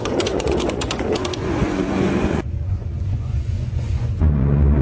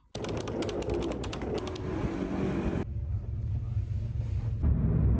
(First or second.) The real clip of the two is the second